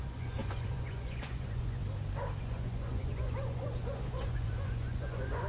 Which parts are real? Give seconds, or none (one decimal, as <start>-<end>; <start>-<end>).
1.8-2.4